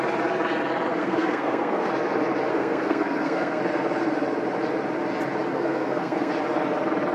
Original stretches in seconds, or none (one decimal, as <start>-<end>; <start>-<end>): 0.0-0.9; 1.9-2.5; 3.6-5.5; 6.3-7.1